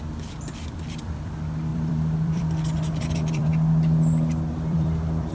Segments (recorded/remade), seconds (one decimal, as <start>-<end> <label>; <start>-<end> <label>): 0.0-3.5 remade; 3.5-4.5 recorded; 4.5-5.3 remade